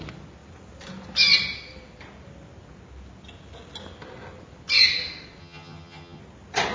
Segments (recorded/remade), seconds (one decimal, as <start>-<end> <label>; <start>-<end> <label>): 0.0-5.4 recorded; 5.4-6.2 remade; 6.2-6.7 recorded